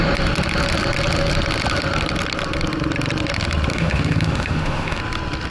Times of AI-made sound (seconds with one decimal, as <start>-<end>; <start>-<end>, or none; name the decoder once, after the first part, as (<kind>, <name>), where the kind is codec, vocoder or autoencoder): 3.7-5.0 (autoencoder, DAC-VAE)